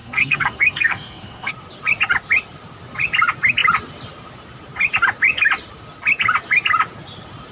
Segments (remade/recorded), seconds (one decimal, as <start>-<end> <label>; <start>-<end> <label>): 0.0-1.5 remade; 1.5-7.5 recorded